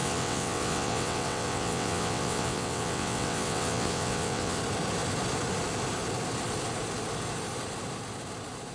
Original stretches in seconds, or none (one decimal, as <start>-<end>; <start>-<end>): 4.6-8.7

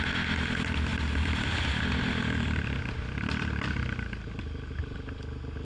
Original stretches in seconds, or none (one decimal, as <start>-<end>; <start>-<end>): 0.0-5.6

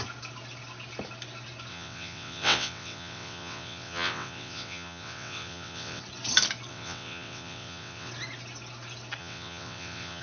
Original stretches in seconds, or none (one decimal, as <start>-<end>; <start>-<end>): 0.0-1.7; 6.0-6.7; 8.1-9.2

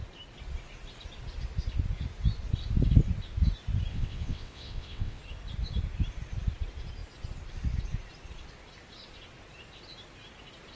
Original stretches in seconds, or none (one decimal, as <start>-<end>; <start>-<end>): 0.0-3.9; 5.2-10.8

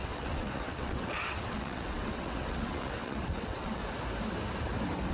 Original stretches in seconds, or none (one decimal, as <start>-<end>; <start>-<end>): 3.8-5.1

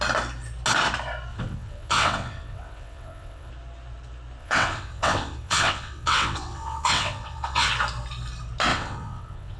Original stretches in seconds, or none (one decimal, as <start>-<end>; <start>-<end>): 0.0-1.3; 3.5-4.4; 7.7-8.7